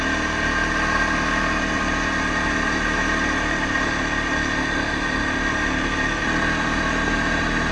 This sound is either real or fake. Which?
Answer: real